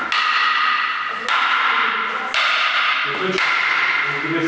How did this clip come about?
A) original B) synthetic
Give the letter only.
A